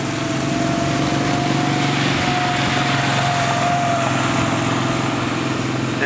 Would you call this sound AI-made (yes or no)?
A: no